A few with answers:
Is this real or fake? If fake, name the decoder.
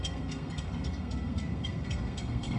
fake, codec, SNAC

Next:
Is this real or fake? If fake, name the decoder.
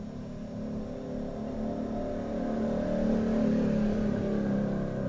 real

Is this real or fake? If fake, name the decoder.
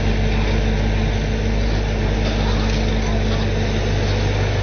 real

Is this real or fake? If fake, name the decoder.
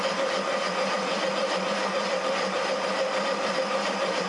fake, vocoder, BigVGAN v2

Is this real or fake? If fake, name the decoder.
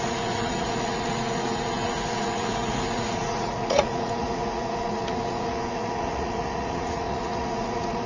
fake, vocoder, Vocos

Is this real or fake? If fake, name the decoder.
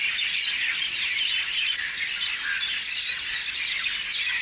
real